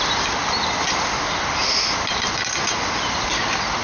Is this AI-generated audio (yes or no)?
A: no